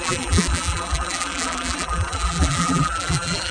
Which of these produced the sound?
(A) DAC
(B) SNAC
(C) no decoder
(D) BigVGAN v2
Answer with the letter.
D